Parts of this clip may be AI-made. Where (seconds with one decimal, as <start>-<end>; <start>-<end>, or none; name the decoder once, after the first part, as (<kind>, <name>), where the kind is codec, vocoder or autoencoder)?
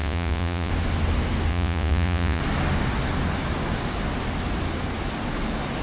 0.0-0.7 (vocoder, Vocos); 1.5-2.4